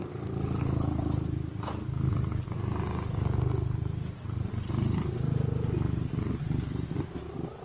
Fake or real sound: real